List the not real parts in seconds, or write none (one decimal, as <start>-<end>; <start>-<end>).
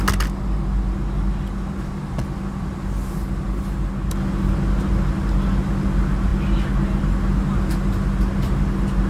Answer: none